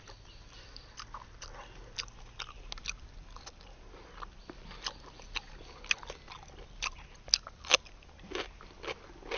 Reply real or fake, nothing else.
real